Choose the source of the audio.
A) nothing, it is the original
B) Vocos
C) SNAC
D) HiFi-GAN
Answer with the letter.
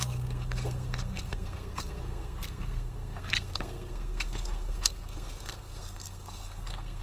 C